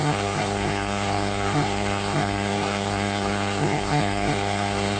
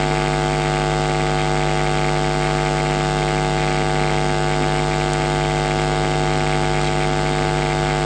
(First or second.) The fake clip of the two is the first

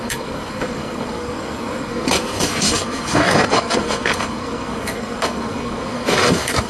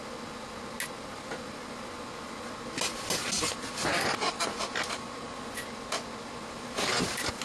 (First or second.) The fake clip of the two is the first